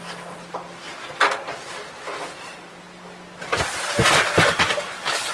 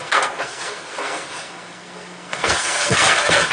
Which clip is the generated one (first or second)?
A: second